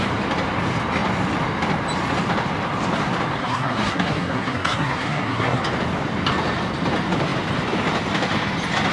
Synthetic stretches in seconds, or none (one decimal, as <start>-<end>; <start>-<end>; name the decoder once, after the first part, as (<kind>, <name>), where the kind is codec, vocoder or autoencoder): 3.4-5.6 (codec, SNAC)